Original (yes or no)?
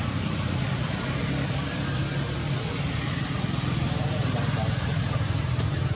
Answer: no